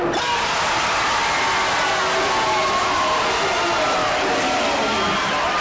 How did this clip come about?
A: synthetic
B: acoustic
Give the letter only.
B